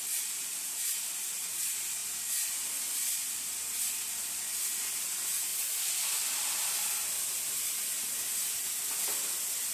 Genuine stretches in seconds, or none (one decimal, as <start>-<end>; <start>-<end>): 0.0-5.5; 7.7-9.7